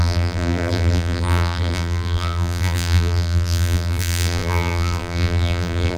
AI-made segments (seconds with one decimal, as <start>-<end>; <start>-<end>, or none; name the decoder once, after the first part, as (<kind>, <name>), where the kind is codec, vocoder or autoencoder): 0.0-6.0 (vocoder, BigVGAN v2)